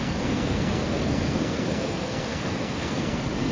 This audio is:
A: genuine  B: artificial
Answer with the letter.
B